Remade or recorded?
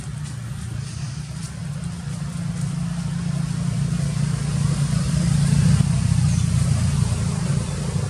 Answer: recorded